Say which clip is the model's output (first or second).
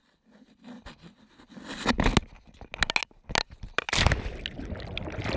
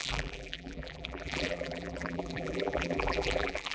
second